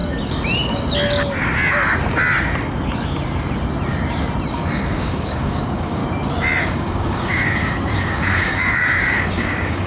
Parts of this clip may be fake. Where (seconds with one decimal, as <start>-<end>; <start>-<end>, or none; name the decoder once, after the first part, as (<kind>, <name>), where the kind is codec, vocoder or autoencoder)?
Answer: 4.5-6.0 (codec, DAC); 6.6-9.9